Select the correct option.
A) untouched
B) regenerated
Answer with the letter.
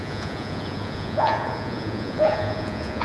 B